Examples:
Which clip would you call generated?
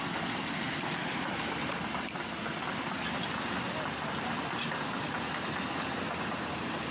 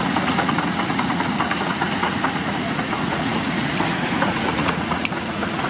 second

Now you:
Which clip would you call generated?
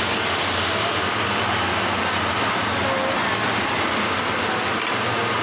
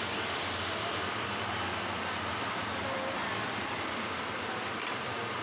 second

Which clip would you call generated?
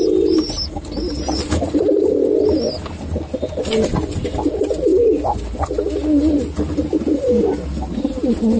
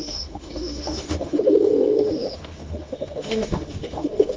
second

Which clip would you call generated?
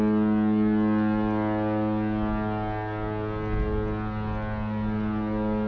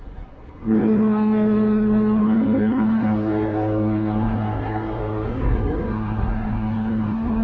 second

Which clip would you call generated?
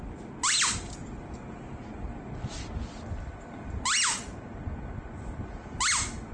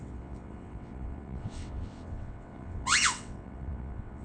second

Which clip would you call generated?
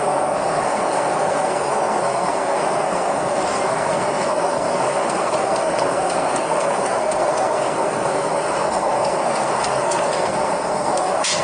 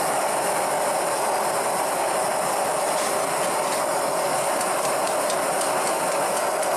first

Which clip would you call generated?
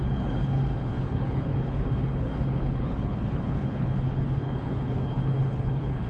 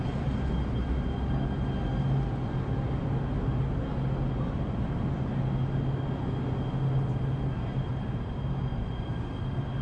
first